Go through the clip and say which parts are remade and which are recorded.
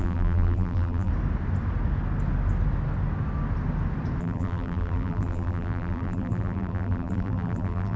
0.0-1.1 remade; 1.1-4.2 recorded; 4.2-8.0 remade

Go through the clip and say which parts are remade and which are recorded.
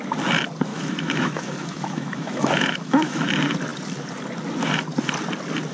0.0-0.7 recorded; 0.7-3.3 remade; 3.3-5.7 recorded